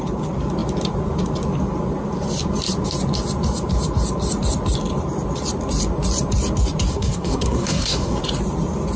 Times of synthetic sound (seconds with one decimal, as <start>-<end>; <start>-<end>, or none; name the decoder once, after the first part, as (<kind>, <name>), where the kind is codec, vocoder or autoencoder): 6.9-8.2 (codec, SNAC)